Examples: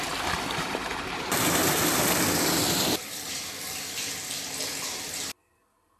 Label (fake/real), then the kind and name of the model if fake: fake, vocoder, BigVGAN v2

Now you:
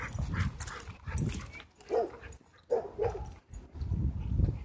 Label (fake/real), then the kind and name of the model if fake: real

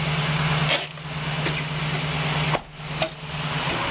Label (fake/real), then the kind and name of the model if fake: real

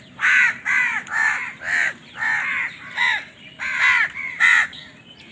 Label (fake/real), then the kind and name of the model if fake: fake, vocoder, BigVGAN v2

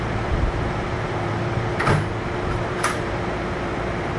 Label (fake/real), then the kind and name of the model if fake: fake, vocoder, BigVGAN v2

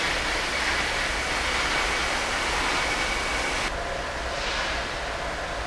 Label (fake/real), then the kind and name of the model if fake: real